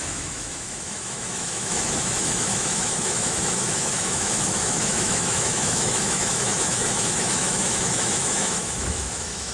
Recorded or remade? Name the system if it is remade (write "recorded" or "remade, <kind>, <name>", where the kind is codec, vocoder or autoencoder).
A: remade, autoencoder, DAC-VAE